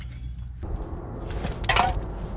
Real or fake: real